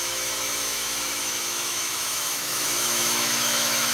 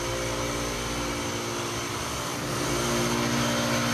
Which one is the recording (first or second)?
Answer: second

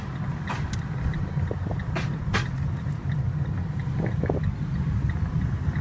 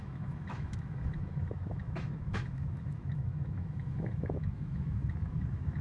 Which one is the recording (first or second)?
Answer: first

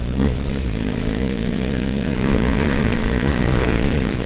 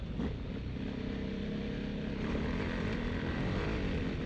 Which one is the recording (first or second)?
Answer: second